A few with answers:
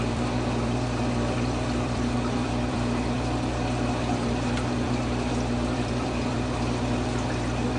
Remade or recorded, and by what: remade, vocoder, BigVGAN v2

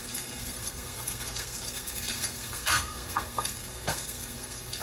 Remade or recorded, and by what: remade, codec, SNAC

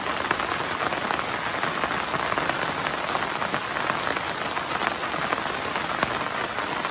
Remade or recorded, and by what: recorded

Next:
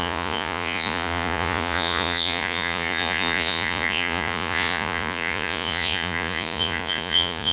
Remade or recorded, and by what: remade, vocoder, Vocos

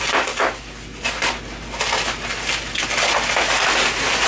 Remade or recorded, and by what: recorded